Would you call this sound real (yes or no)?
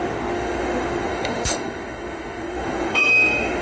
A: no